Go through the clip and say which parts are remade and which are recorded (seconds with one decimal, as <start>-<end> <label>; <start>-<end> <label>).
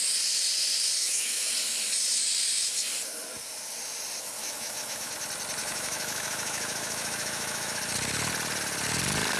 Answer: 0.0-1.0 recorded; 1.0-1.5 remade; 1.5-4.4 recorded; 4.4-5.1 remade; 5.1-5.6 recorded; 5.6-7.8 remade; 7.8-9.4 recorded